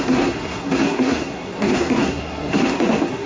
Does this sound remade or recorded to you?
remade